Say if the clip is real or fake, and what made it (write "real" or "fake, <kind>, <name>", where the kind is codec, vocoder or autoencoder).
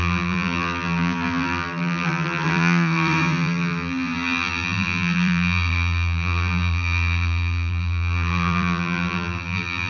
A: fake, vocoder, BigVGAN v2